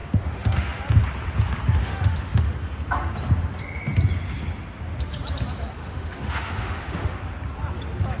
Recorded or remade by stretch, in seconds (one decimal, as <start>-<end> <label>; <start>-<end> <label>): 0.0-0.8 remade; 0.8-1.8 recorded; 1.8-2.5 remade; 2.5-5.8 recorded; 5.8-7.2 remade; 7.2-8.2 recorded